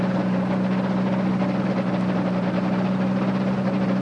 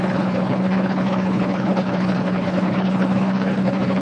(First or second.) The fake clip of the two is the second